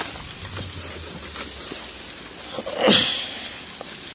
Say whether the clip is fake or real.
real